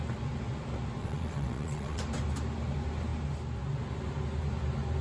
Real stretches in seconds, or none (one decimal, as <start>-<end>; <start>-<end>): 0.0-1.0; 2.0-5.0